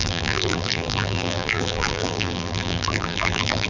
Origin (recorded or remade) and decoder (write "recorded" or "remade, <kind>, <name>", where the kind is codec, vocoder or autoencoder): remade, vocoder, BigVGAN v2